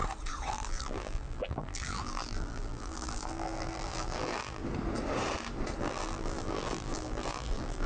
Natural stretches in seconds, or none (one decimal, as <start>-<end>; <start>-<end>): 0.0-0.5; 4.6-5.8